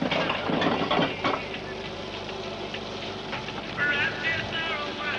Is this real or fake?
real